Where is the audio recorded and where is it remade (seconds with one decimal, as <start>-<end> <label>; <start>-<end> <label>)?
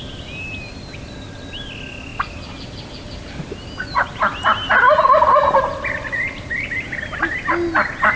0.0-8.2 recorded